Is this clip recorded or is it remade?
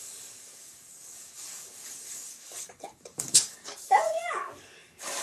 remade